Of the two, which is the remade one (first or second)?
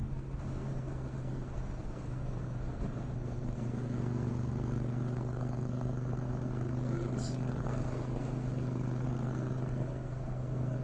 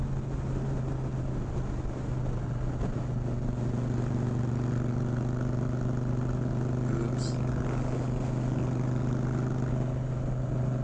first